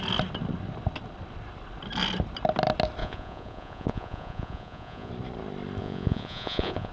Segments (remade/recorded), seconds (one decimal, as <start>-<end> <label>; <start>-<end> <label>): 0.0-3.0 recorded; 3.0-5.1 remade; 5.1-5.8 recorded; 5.8-6.9 remade